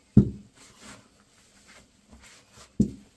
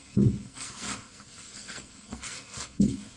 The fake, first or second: second